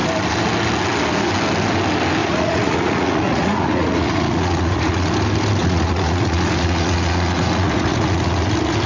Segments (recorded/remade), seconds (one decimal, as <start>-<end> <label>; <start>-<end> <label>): 0.0-2.2 recorded; 2.2-5.1 remade; 5.1-5.6 recorded; 5.6-8.5 remade; 8.5-8.9 recorded